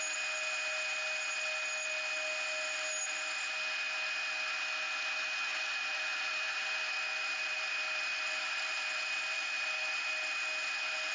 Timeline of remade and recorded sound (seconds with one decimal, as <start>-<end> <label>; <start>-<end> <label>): 0.0-5.5 recorded; 5.5-10.1 remade; 10.1-11.1 recorded